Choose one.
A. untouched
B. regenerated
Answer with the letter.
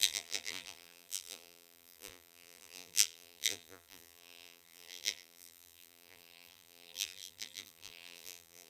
B